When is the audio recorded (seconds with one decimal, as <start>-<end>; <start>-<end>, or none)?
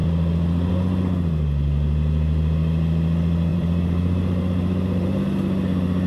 0.0-3.5; 5.2-6.1